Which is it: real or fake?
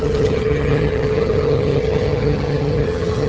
fake